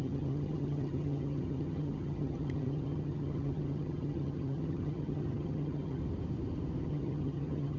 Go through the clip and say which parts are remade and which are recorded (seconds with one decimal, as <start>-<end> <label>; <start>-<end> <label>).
0.0-6.0 remade; 6.0-6.8 recorded; 6.8-7.8 remade